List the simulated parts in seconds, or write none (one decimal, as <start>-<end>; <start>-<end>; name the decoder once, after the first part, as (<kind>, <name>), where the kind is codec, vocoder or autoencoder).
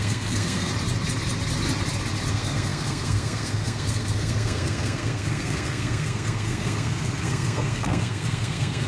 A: 0.0-0.7 (codec, SNAC); 2.3-8.9